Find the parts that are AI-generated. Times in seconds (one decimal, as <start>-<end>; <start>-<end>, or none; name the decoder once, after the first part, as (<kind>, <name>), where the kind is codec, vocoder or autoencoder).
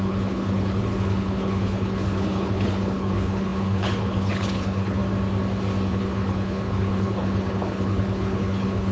0.0-5.0 (codec, HILCodec); 5.9-8.9